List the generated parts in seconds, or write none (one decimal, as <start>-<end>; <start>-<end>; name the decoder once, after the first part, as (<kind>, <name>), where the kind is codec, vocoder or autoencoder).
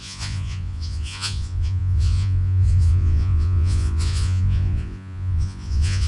0.0-6.1 (vocoder, Vocos)